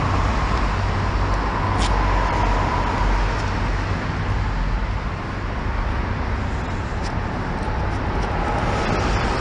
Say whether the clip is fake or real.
real